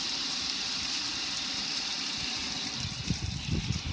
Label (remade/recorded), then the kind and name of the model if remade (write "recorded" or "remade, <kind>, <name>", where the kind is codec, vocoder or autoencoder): remade, vocoder, BigVGAN v2